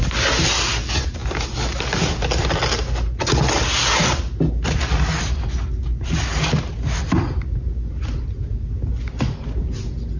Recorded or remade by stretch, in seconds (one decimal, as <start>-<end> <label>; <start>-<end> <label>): 0.0-10.2 recorded